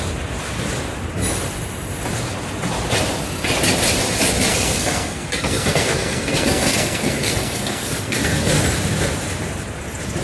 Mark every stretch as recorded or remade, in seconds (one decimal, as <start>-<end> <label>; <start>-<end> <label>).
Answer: 0.0-4.5 recorded; 4.5-8.6 remade; 8.6-10.2 recorded